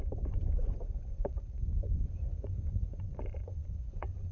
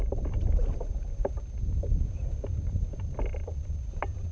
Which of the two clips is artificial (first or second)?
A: first